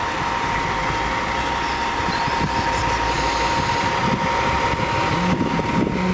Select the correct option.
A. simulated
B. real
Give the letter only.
B